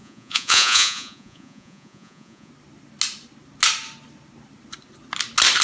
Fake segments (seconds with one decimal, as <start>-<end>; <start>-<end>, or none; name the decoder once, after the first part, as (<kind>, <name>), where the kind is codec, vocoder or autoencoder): 0.0-2.5 (vocoder, Vocos)